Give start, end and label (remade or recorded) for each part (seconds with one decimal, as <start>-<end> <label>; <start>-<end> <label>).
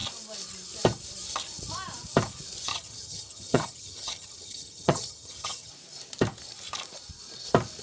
0.0-2.7 recorded; 2.7-5.7 remade; 5.7-7.8 recorded